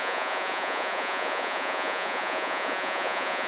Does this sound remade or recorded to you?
remade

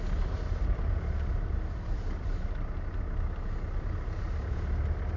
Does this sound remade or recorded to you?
recorded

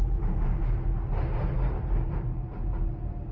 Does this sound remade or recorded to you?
recorded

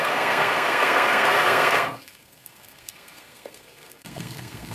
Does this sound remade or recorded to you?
remade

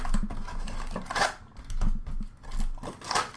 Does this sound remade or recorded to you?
recorded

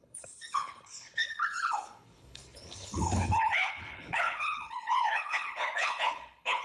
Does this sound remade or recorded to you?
remade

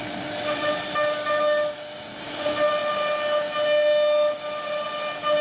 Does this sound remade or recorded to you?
recorded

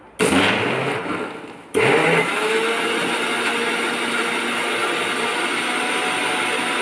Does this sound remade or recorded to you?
recorded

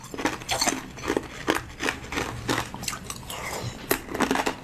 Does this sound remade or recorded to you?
recorded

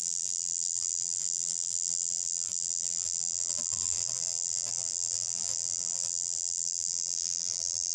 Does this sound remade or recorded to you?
remade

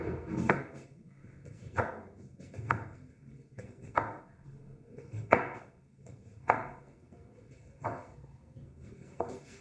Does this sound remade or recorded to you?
remade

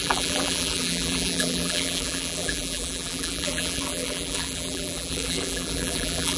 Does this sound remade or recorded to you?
remade